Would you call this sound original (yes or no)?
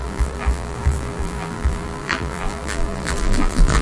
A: no